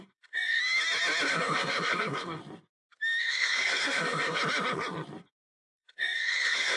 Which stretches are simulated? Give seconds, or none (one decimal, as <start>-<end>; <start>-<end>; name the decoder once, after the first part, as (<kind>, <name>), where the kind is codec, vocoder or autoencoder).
0.0-0.6 (codec, SNAC); 1.3-2.4; 3.2-4.4; 5.2-6.8

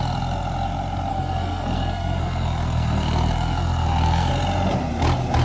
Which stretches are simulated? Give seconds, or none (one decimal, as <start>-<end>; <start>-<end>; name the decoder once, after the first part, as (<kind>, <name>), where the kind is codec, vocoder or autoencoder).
1.1-4.3 (codec, SNAC)

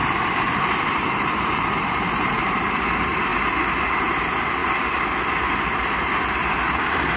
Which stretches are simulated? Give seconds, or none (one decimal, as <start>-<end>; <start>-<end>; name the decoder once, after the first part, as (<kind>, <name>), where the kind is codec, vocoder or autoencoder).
0.0-3.3 (vocoder, BigVGAN v2); 3.9-4.6; 5.6-7.2

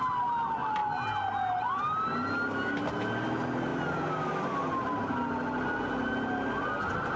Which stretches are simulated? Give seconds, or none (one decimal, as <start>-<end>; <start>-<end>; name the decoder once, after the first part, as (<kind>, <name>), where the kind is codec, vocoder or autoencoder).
none

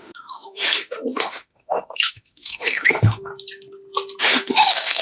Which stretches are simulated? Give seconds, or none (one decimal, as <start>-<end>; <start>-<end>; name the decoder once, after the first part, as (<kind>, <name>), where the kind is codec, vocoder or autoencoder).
0.0-3.3 (autoencoder, DAC-VAE); 4.2-5.0